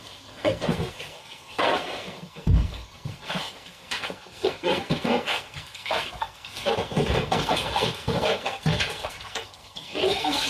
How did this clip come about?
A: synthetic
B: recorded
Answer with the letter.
A